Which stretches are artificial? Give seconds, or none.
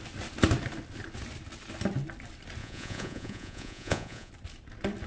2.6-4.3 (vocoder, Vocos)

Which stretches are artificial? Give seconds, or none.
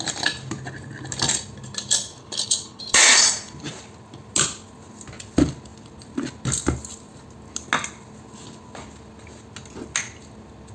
2.2-2.8 (codec, HILCodec)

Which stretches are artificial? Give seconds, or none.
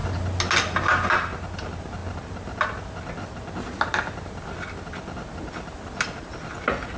none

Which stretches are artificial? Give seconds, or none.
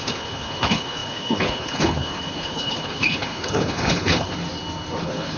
0.0-4.3 (codec, HILCodec); 5.0-5.4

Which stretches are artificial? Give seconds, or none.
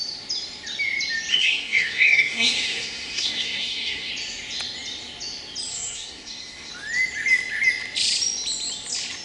1.3-4.1 (codec, SNAC); 5.7-6.7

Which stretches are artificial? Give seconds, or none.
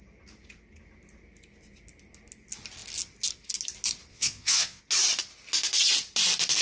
4.1-4.8 (vocoder, Vocos)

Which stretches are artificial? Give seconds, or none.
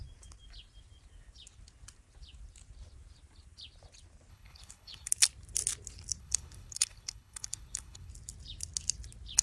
4.3-5.1 (codec, HILCodec); 6.2-8.1